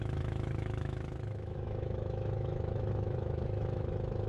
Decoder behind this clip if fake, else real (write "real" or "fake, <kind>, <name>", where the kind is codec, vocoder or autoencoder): fake, autoencoder, DAC-VAE